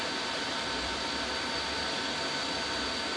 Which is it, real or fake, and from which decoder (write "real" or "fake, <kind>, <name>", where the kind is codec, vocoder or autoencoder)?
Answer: fake, vocoder, BigVGAN v2